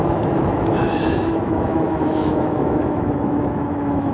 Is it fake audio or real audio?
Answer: fake